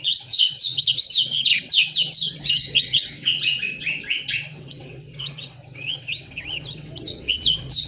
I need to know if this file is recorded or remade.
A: remade